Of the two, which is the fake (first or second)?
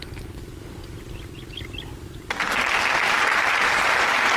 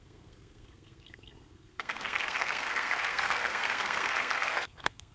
second